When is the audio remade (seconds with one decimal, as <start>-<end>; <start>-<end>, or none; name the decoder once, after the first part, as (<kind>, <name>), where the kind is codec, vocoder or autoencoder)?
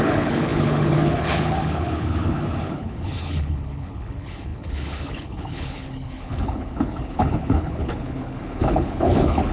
0.0-9.5 (codec, HILCodec)